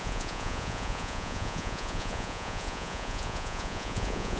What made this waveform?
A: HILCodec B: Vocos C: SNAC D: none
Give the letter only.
B